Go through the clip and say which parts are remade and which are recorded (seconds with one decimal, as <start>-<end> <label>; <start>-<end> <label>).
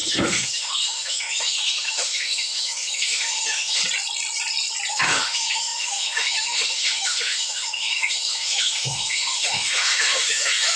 0.0-3.8 remade; 3.8-4.9 recorded; 4.9-10.8 remade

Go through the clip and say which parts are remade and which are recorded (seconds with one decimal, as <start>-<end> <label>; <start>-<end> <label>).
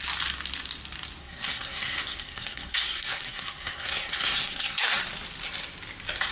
0.0-1.2 recorded; 1.2-5.0 remade; 5.0-6.3 recorded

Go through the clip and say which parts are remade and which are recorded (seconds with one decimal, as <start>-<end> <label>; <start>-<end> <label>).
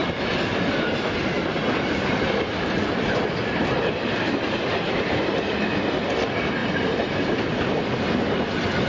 0.0-0.7 recorded; 0.7-8.9 remade